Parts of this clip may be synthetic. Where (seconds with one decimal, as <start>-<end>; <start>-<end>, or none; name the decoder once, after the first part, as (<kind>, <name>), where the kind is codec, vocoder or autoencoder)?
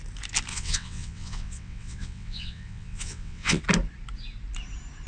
0.5-3.6 (vocoder, WaveNeXt)